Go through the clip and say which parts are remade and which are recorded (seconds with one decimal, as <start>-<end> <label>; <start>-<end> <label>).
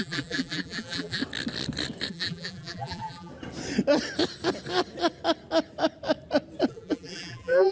0.0-1.2 remade; 1.2-2.1 recorded; 2.1-3.3 remade; 3.3-6.7 recorded; 6.7-7.7 remade